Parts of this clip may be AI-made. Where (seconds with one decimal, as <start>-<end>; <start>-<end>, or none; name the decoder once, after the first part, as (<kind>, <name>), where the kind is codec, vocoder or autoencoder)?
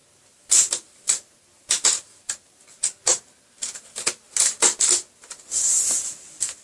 none